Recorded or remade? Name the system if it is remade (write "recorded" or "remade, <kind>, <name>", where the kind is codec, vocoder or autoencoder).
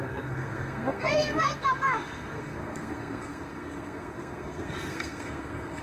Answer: remade, codec, SNAC